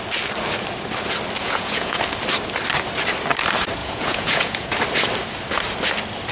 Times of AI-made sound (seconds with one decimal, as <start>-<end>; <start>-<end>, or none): 1.4-2.0; 3.8-4.7